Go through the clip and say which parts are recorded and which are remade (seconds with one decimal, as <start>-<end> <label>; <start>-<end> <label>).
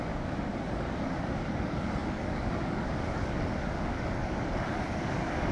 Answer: 0.0-5.5 remade